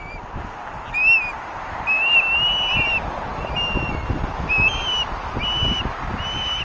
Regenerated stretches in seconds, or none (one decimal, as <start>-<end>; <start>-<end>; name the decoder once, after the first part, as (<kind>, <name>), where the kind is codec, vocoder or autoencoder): none